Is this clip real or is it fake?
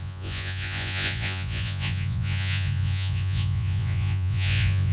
fake